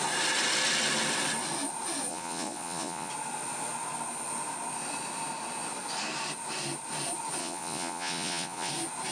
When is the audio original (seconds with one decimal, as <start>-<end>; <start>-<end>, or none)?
0.0-2.1; 3.1-7.4; 8.7-9.1